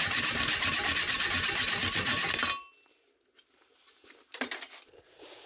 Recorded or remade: recorded